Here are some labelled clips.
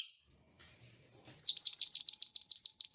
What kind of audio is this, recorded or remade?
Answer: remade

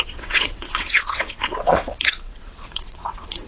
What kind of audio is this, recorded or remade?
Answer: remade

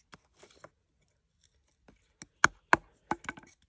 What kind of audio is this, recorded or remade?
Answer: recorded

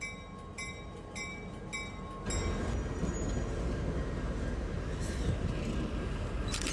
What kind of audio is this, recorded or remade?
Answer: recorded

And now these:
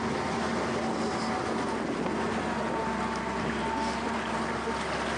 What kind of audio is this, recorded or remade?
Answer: recorded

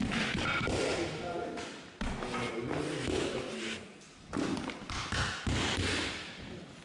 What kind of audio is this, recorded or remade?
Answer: recorded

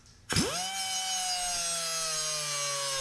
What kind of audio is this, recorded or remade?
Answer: recorded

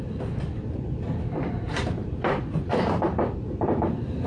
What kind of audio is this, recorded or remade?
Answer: remade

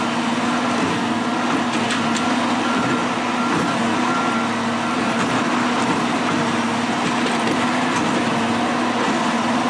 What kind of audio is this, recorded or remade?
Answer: recorded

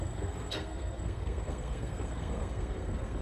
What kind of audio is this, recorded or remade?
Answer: remade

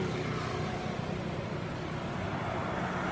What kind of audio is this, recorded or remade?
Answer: recorded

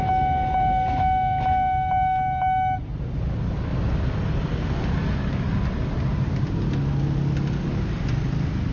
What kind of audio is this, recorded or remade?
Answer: recorded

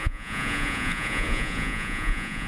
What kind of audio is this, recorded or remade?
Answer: remade